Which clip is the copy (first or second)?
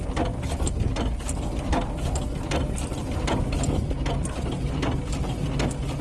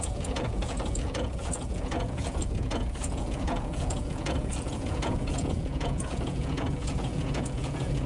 second